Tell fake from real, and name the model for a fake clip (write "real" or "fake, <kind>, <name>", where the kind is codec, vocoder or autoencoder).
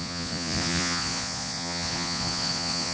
fake, vocoder, Vocos